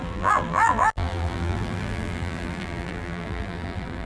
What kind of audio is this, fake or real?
fake